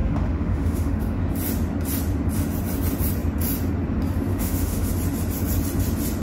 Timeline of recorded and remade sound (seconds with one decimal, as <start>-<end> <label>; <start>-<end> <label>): 0.0-1.2 remade; 1.2-4.3 recorded; 4.3-4.9 remade; 4.9-6.2 recorded